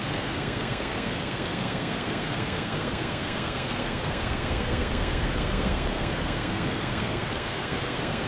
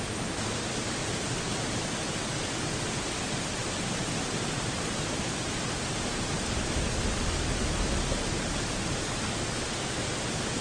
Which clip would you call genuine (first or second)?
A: second